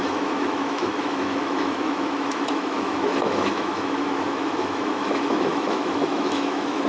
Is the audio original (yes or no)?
no